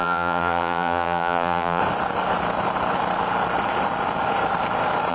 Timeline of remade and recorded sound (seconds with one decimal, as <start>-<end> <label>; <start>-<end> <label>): 0.0-1.8 remade; 1.8-5.1 recorded